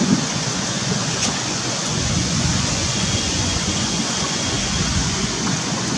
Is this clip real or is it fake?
fake